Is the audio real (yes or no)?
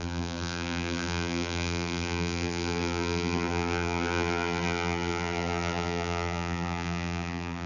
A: no